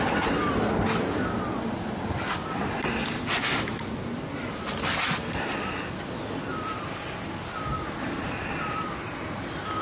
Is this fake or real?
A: real